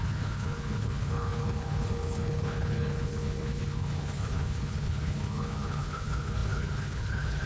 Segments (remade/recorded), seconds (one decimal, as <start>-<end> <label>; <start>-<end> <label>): 0.0-7.5 remade